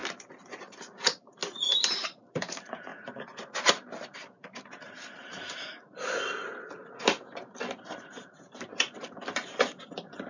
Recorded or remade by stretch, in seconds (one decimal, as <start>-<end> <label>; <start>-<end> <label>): 0.0-0.6 recorded; 0.6-1.4 remade; 1.4-2.2 recorded; 2.2-2.9 remade; 2.9-3.7 recorded; 3.7-5.7 remade; 5.7-6.8 recorded; 6.8-10.3 remade